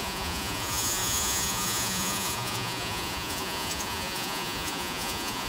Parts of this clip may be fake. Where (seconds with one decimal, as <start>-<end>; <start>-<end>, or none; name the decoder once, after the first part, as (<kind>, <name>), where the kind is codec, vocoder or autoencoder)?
0.0-5.5 (vocoder, Vocos)